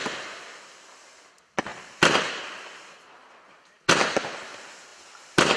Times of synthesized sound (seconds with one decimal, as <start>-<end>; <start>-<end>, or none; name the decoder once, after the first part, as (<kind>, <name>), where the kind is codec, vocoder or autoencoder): 1.7-2.4 (vocoder, BigVGAN v2); 4.9-5.6

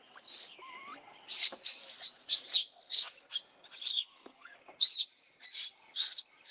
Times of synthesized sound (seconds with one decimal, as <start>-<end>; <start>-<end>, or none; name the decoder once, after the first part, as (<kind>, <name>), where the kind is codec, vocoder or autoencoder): 2.5-3.1 (codec, SNAC); 3.9-4.6

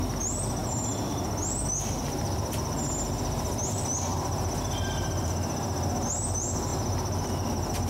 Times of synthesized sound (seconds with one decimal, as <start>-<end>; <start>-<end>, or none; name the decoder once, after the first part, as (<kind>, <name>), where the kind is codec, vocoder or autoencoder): none

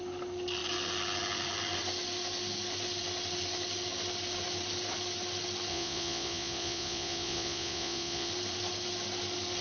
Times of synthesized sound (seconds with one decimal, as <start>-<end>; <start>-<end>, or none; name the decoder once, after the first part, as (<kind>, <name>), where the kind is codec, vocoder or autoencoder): 5.7-8.3 (vocoder, Vocos)

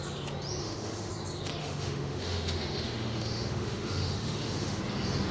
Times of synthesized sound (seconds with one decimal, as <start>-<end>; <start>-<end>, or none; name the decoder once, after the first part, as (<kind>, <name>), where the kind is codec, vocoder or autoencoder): 0.6-1.1 (autoencoder, DAC-VAE); 1.6-4.8

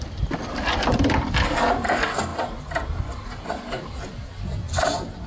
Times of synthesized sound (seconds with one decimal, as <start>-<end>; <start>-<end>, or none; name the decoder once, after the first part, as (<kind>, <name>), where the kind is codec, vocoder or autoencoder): 0.0-5.3 (vocoder, BigVGAN v2)